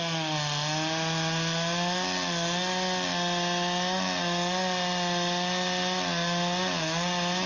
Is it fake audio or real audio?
real